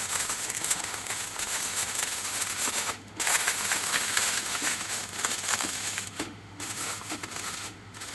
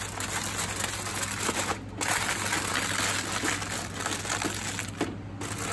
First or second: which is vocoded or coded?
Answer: first